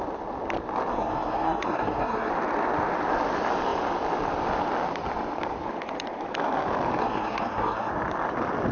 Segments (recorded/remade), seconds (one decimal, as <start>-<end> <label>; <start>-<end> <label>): 0.0-0.9 recorded; 0.9-2.3 remade; 2.3-7.0 recorded; 7.0-7.9 remade; 7.9-8.7 recorded